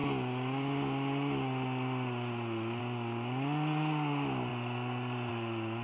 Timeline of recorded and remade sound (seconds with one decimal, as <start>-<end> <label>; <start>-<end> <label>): 0.0-5.8 recorded